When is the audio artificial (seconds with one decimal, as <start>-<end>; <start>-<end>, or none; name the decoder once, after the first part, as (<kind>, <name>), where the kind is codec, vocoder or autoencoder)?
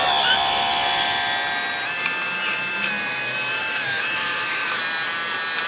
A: 3.6-4.8 (autoencoder, DAC-VAE)